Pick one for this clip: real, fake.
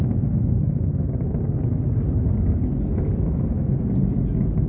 real